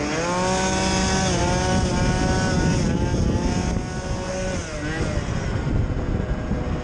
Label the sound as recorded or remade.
recorded